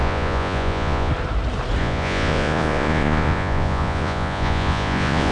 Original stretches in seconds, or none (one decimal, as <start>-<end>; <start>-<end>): 1.1-1.8